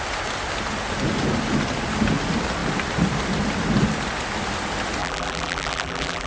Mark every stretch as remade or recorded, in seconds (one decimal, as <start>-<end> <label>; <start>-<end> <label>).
0.0-5.0 recorded; 5.0-6.3 remade